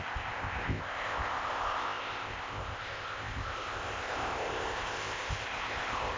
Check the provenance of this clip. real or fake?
fake